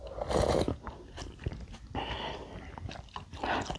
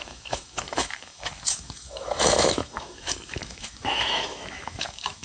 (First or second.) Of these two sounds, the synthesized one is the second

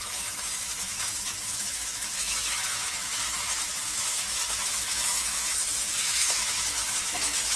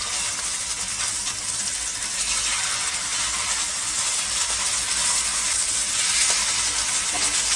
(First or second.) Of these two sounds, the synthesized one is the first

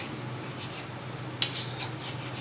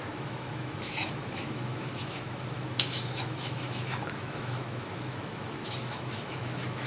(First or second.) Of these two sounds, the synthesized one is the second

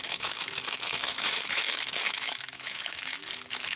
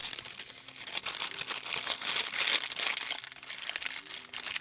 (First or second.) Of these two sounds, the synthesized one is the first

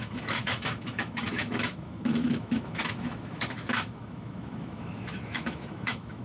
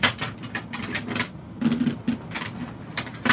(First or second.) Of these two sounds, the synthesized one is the first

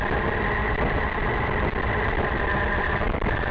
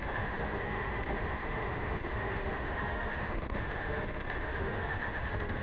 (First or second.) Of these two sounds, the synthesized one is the second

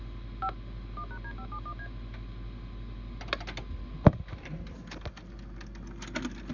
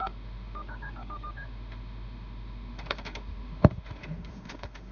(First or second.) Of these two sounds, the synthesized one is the second